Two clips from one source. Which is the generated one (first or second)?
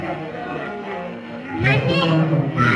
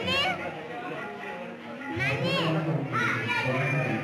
first